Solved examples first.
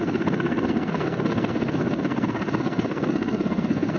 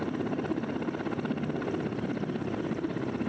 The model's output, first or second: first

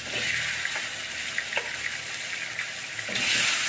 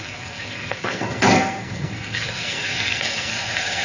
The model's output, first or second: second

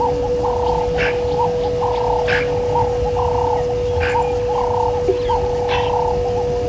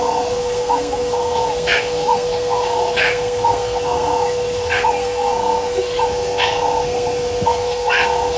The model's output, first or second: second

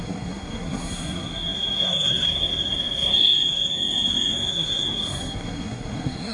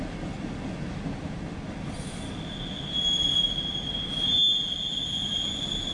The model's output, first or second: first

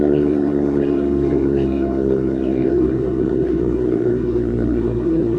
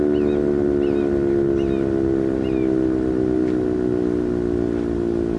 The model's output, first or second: first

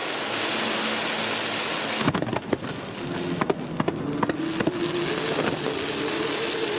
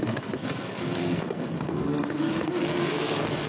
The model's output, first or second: second